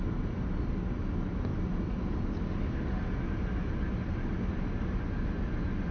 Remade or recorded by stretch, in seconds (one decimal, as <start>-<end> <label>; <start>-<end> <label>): 0.0-5.9 recorded